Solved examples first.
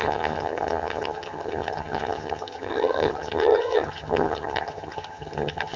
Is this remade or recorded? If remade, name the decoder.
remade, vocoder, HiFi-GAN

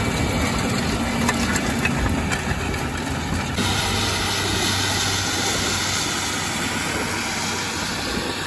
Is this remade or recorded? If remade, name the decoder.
recorded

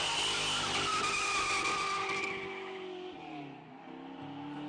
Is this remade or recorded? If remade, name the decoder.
recorded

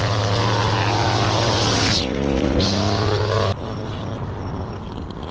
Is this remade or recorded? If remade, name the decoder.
recorded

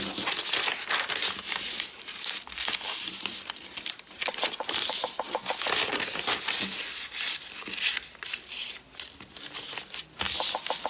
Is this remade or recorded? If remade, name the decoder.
recorded